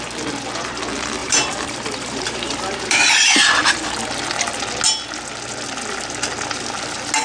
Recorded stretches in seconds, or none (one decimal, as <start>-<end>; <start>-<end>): 0.0-1.2; 3.0-7.2